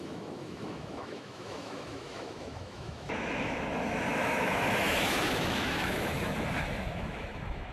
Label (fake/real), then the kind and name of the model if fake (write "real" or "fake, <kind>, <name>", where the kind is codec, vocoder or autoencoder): fake, autoencoder, DAC-VAE